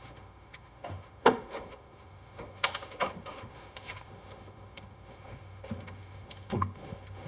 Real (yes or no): no